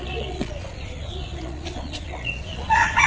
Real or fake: fake